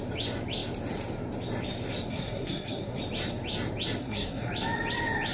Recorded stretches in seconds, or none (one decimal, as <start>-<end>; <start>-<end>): 0.0-2.1; 3.0-4.0; 4.5-5.3